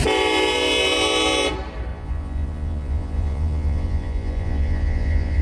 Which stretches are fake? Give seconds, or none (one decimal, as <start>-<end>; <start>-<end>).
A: 1.9-5.4